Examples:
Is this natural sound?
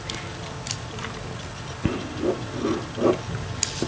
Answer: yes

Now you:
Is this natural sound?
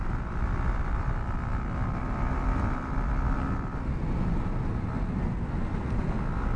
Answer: yes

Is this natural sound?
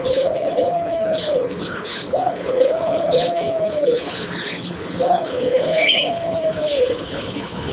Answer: no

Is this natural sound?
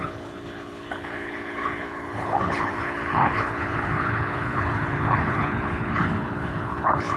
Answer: no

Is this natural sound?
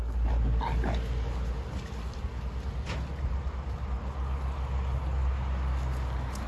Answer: yes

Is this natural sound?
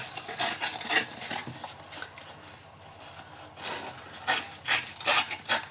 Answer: yes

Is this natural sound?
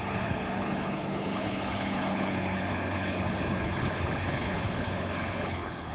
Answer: no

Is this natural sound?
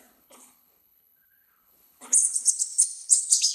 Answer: no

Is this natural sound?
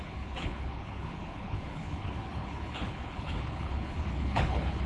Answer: no